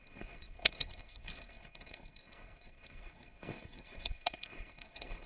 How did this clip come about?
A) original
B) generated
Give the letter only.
B